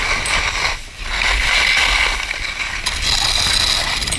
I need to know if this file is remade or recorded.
recorded